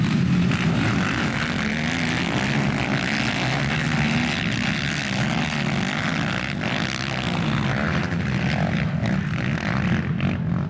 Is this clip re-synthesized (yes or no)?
no